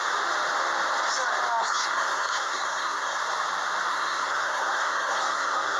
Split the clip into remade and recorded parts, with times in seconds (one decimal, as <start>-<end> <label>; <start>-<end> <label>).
0.0-1.6 recorded; 1.6-3.2 remade; 3.2-3.9 recorded; 3.9-5.8 remade